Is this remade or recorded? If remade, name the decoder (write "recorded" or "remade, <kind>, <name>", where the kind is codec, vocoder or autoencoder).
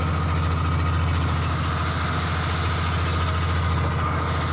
recorded